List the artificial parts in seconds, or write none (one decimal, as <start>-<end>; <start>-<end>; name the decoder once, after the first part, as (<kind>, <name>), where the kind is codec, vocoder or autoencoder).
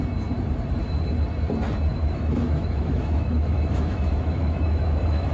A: 1.9-5.3 (autoencoder, DAC-VAE)